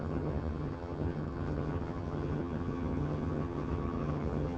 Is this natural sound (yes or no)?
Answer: no